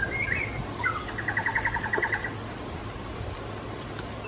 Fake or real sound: real